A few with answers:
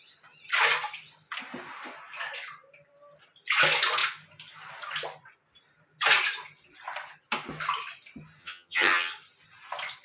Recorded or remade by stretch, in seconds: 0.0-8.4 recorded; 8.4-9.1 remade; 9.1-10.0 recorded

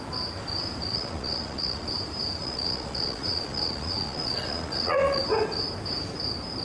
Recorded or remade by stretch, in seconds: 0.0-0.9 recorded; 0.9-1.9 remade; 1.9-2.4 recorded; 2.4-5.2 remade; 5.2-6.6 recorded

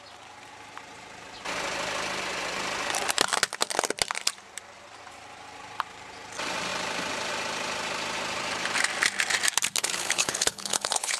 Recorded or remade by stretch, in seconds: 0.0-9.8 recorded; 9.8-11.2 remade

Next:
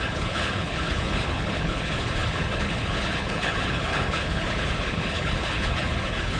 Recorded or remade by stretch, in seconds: 0.0-6.4 remade

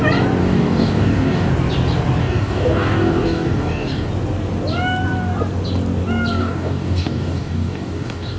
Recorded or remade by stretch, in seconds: 0.0-0.4 recorded; 0.4-1.5 remade; 1.5-2.2 recorded; 2.2-4.1 remade; 4.1-6.4 recorded; 6.4-8.4 remade